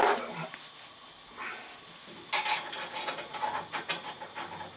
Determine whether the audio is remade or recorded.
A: recorded